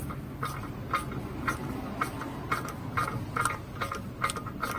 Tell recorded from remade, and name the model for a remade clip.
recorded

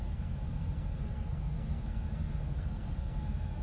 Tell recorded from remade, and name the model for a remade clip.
remade, codec, SNAC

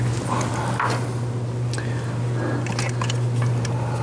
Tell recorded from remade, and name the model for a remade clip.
recorded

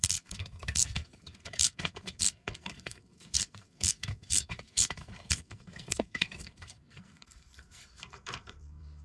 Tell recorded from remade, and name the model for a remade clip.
remade, codec, SNAC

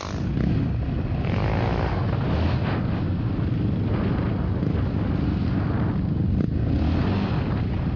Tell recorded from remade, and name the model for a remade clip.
recorded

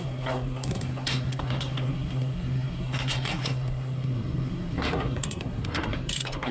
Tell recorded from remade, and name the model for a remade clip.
remade, codec, SNAC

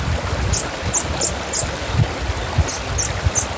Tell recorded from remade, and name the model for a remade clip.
recorded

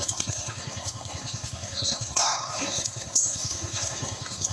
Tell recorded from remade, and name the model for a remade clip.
remade, codec, SNAC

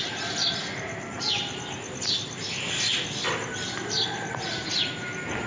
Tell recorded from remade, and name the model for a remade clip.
recorded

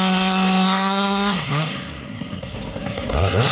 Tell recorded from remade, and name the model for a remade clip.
remade, codec, SNAC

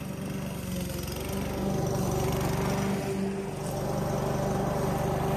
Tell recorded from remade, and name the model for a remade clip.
recorded